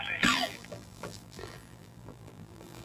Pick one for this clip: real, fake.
fake